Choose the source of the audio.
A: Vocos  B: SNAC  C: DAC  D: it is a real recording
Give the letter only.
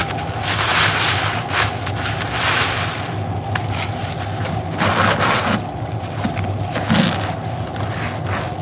D